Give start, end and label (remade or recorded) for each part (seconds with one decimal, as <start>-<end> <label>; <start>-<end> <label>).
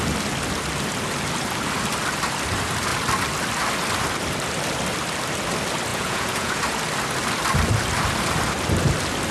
0.0-5.9 recorded; 5.9-6.6 remade; 6.6-9.3 recorded